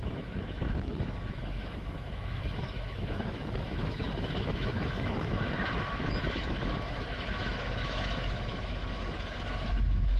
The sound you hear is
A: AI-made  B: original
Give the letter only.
A